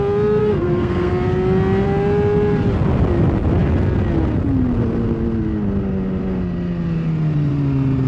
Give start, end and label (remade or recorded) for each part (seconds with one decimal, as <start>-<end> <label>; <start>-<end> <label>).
0.0-0.4 recorded; 0.4-1.1 remade; 1.1-8.1 recorded